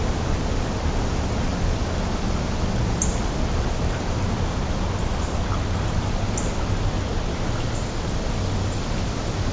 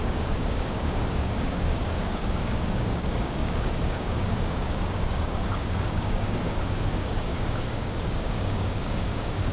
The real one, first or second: first